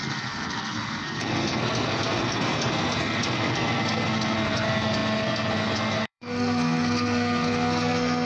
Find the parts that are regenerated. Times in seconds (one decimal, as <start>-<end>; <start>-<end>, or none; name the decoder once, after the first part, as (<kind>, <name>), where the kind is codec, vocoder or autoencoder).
0.0-8.3 (codec, SNAC)